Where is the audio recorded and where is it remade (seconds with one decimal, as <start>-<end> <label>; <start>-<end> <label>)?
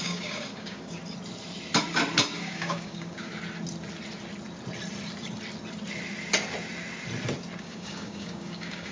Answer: 0.0-1.0 remade; 1.0-2.4 recorded; 2.4-3.3 remade; 3.3-7.6 recorded; 7.6-8.9 remade